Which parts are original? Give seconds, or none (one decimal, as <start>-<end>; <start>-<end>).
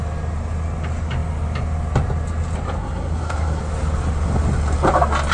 0.0-2.8; 3.6-5.3